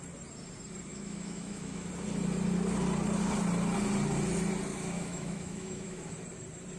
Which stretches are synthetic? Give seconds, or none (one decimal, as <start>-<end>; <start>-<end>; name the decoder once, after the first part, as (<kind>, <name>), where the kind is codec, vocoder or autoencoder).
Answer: 0.9-1.9 (autoencoder, DAC-VAE); 4.7-6.1